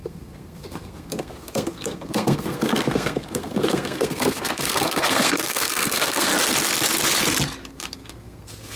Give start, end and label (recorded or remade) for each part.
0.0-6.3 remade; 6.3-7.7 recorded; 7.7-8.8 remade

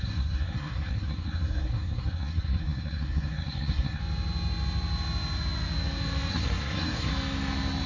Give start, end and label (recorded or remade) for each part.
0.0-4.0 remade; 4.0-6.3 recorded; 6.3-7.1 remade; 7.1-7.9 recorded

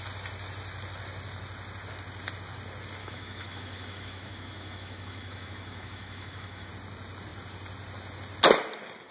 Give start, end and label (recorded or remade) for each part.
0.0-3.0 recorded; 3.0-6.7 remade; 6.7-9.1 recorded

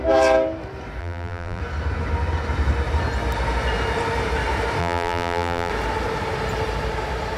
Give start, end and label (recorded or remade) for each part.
0.0-1.0 recorded; 1.0-1.6 remade; 1.6-4.8 recorded; 4.8-5.7 remade; 5.7-7.4 recorded

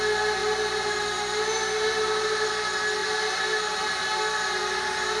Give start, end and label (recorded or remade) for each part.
0.0-0.4 recorded; 0.4-2.5 remade; 2.5-3.0 recorded; 3.0-4.6 remade; 4.6-5.2 recorded

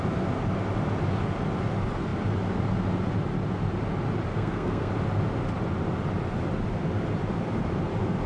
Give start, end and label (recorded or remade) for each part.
0.0-4.3 recorded; 4.3-4.9 remade; 4.9-8.3 recorded

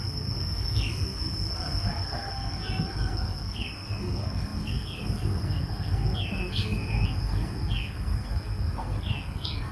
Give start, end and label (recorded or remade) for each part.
0.0-9.7 remade

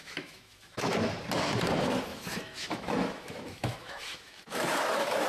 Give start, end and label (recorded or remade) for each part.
0.0-0.9 remade; 0.9-2.1 recorded; 2.1-5.3 remade